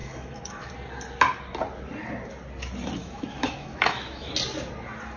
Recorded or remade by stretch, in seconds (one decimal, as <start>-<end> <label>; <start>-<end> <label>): 0.0-0.7 remade; 0.7-3.0 recorded; 3.0-4.3 remade; 4.3-5.2 recorded